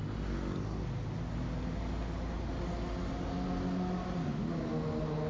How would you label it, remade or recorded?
recorded